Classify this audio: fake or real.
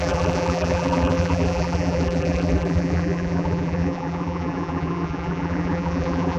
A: fake